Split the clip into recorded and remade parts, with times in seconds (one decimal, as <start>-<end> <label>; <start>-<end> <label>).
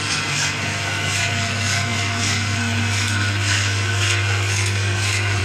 0.0-5.4 remade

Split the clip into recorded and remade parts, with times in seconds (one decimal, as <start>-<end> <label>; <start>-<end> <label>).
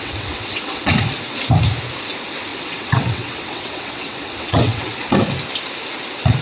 0.0-0.9 remade; 0.9-2.5 recorded; 2.5-4.9 remade; 4.9-6.4 recorded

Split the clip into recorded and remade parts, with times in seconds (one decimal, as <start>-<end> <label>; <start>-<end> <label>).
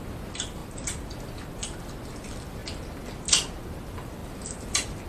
0.0-5.1 recorded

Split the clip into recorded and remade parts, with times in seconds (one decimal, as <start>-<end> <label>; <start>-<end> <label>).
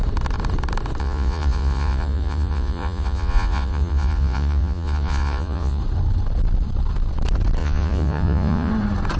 0.0-1.0 recorded; 1.0-5.8 remade; 5.8-7.6 recorded; 7.6-8.7 remade; 8.7-9.2 recorded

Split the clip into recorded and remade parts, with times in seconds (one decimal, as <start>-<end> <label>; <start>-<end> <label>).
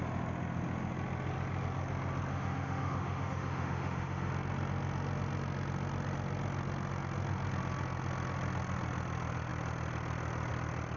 0.0-2.3 recorded; 2.3-4.3 remade; 4.3-11.0 recorded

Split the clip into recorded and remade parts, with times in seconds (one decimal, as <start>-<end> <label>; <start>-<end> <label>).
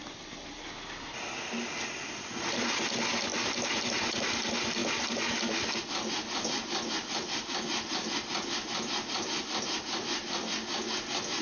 0.0-11.4 recorded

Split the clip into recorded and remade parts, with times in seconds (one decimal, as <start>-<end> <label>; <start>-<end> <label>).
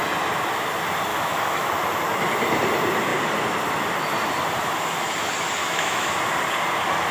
0.0-1.1 recorded; 1.1-1.7 remade; 1.7-5.6 recorded; 5.6-6.1 remade; 6.1-7.1 recorded